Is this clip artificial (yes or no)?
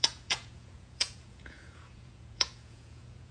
yes